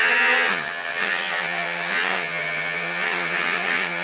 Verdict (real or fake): fake